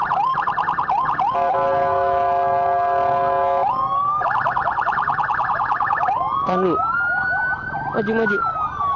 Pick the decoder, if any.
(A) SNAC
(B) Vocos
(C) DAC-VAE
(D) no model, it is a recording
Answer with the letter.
D